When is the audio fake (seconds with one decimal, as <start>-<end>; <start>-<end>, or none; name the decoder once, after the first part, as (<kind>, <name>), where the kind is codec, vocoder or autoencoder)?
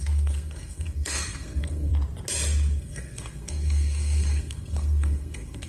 0.0-1.9 (codec, SNAC); 2.8-5.7